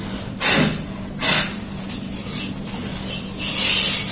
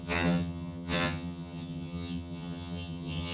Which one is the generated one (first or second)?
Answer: second